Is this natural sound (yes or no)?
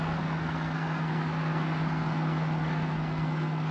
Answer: no